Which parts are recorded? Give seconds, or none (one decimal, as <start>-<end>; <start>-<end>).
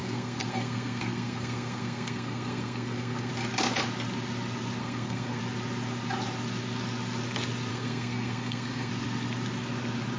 3.3-4.8; 5.4-7.7; 8.9-10.2